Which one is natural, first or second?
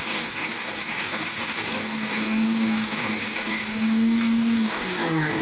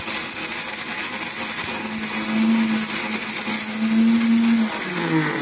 second